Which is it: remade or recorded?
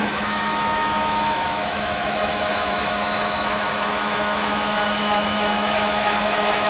remade